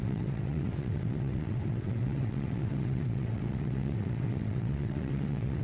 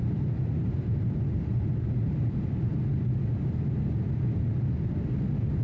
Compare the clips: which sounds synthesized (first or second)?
first